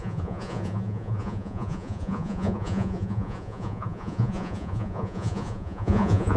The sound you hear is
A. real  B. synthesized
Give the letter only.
B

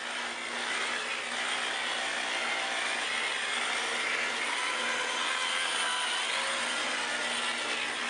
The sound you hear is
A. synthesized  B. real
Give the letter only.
B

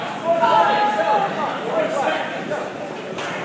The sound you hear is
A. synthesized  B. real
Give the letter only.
B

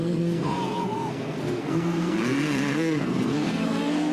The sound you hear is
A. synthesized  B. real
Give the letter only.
A